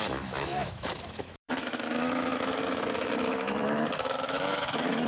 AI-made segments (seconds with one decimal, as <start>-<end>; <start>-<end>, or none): 0.0-5.1